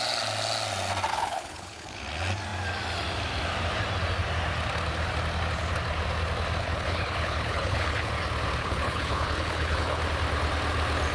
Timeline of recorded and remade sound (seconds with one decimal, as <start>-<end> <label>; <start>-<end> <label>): 0.0-1.1 recorded; 1.1-2.0 remade; 2.0-6.6 recorded; 6.6-8.1 remade; 8.1-8.6 recorded; 8.6-10.0 remade; 10.0-11.1 recorded